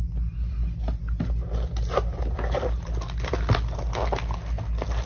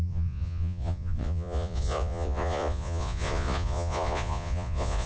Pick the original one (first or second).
first